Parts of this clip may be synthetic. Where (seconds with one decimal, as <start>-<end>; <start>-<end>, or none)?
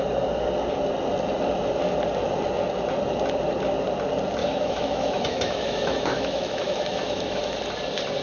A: 4.4-7.6